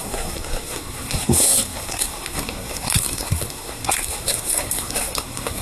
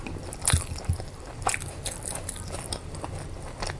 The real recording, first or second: second